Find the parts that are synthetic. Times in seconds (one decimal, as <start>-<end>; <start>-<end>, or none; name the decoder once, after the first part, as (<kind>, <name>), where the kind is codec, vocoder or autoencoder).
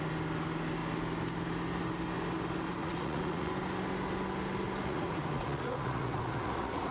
2.8-3.5 (vocoder, Vocos); 4.8-6.9